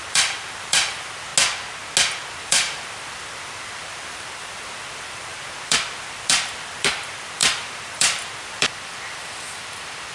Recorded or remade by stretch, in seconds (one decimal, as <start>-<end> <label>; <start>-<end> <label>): 0.0-1.3 remade; 1.3-2.3 recorded; 2.3-10.1 remade